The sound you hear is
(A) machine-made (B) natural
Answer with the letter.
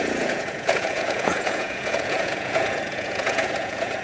A